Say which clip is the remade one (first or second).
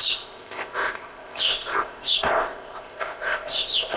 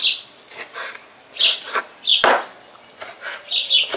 first